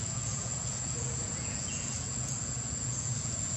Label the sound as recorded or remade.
remade